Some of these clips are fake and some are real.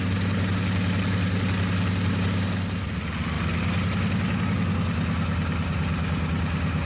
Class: real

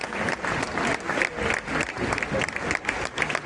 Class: real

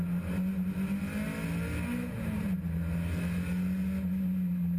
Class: real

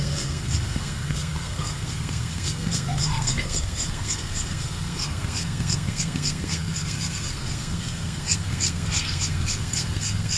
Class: fake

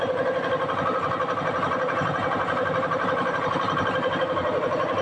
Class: real